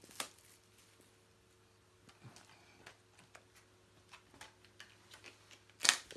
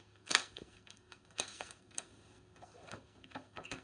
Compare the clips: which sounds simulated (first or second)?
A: second